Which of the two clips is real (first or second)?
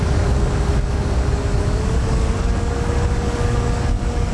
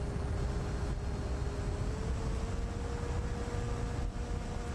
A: second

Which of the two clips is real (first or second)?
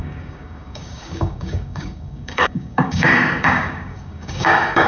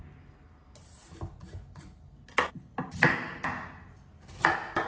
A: second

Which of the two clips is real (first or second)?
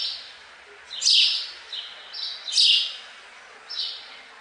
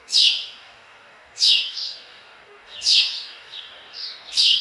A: first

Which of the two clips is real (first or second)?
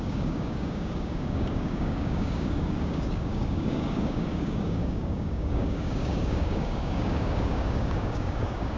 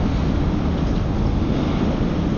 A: second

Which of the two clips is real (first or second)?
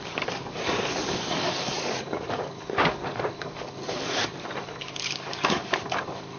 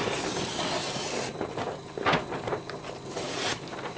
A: second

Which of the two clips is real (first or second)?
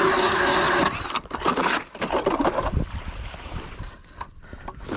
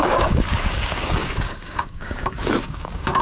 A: first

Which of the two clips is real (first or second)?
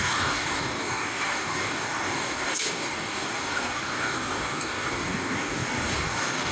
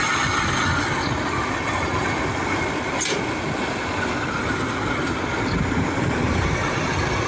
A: second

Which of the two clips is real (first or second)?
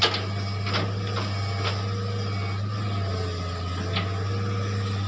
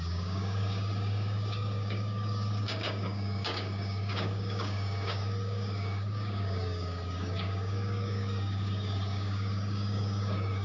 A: first